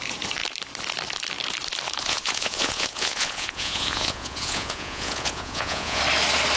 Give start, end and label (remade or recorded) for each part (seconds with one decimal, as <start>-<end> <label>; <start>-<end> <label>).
0.0-2.0 recorded; 2.0-6.0 remade; 6.0-6.6 recorded